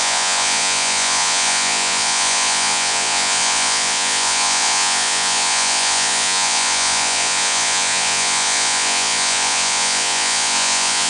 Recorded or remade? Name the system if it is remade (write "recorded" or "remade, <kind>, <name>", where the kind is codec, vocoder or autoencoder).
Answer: remade, vocoder, Vocos